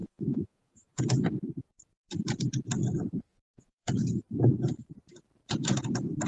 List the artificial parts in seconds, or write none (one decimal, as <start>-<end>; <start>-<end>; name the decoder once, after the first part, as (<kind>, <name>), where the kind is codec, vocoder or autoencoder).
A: 0.0-1.0 (vocoder, Vocos); 3.3-3.9